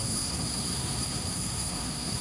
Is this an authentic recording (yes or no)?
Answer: no